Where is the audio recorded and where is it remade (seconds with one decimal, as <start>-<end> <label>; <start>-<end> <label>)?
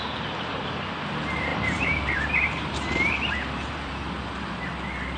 0.0-1.5 recorded; 1.5-3.9 remade; 3.9-5.2 recorded